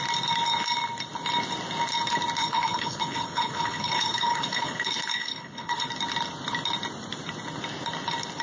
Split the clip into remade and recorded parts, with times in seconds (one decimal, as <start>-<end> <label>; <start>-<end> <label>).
0.0-2.4 recorded; 2.4-5.9 remade; 5.9-8.4 recorded